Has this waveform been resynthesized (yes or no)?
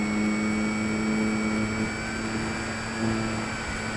no